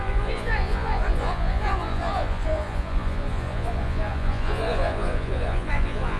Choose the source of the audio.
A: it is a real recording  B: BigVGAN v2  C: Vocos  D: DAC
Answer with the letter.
C